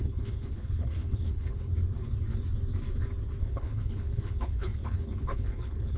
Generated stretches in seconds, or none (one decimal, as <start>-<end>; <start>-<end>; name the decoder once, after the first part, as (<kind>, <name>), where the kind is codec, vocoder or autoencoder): 0.0-1.7 (codec, HILCodec); 3.4-6.0